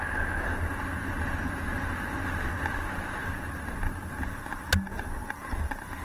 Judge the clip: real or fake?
real